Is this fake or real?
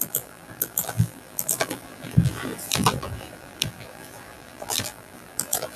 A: fake